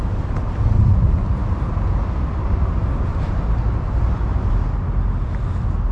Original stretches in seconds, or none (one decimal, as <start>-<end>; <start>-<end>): 0.0-5.9

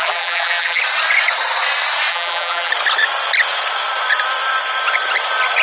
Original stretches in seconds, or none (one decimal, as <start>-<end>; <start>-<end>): 0.8-2.1; 2.7-5.6

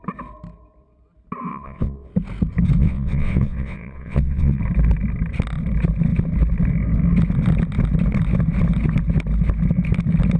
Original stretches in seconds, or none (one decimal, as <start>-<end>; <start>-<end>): 0.0-1.5; 2.1-2.8; 4.6-10.4

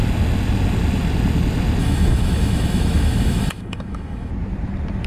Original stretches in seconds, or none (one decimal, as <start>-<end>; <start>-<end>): 0.0-1.8; 4.3-5.1

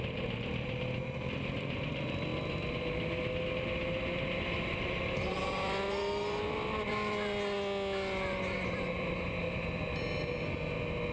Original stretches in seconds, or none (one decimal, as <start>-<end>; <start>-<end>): 0.0-11.1